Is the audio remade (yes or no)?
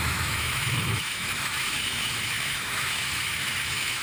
yes